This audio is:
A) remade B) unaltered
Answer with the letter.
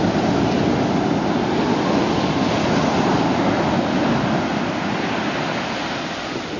B